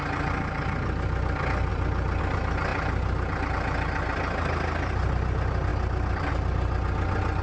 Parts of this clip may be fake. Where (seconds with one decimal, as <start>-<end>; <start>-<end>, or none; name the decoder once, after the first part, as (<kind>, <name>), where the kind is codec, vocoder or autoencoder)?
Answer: 1.7-2.2 (vocoder, BigVGAN v2); 2.7-3.5